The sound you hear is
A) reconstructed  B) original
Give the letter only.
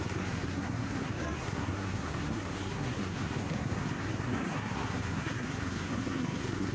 A